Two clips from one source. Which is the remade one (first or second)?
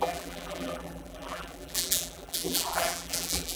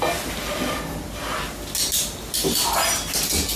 first